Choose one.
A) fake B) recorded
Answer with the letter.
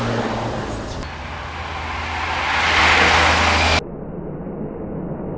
B